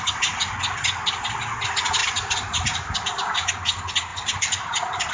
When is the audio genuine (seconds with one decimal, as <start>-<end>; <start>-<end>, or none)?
0.0-2.0; 3.5-4.1